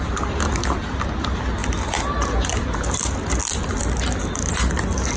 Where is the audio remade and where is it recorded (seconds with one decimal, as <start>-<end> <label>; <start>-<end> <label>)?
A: 0.0-5.2 recorded